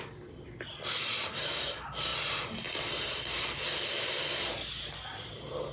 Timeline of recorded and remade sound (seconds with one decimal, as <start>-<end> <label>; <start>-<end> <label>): 0.0-5.7 recorded